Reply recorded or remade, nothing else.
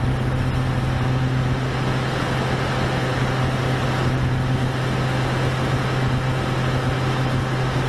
recorded